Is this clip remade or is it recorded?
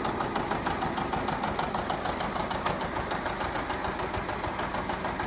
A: recorded